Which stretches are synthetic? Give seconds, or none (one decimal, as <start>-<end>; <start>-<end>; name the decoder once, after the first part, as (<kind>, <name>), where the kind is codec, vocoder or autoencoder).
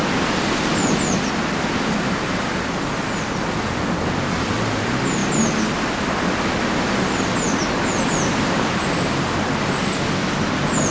none